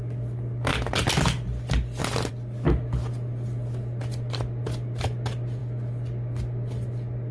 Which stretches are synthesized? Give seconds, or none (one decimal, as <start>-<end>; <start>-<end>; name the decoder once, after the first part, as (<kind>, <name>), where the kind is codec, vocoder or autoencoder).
none